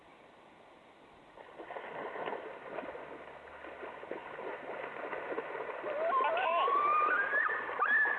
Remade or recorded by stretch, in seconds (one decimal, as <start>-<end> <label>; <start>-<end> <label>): 0.0-8.2 recorded